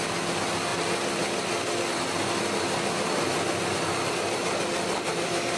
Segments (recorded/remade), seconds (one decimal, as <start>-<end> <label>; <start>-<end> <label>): 0.0-5.6 recorded